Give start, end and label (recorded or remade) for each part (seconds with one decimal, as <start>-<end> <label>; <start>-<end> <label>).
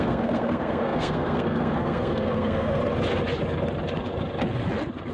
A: 0.0-2.8 remade; 2.8-5.1 recorded